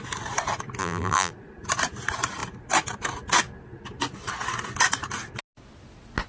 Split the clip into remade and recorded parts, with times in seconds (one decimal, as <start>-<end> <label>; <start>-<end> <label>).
0.0-0.8 recorded; 0.8-1.3 remade; 1.3-6.3 recorded